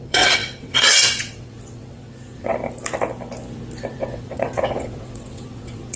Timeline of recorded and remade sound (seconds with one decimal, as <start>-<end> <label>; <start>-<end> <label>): 0.0-2.5 remade; 2.5-3.9 recorded; 3.9-6.0 remade